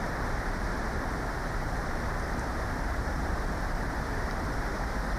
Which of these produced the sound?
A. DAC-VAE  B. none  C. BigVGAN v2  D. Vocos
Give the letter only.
C